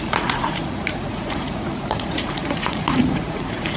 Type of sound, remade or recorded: remade